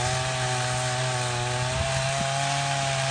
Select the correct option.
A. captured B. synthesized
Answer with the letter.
A